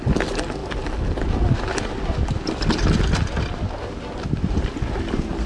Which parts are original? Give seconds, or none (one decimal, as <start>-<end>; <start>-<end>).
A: 0.0-5.5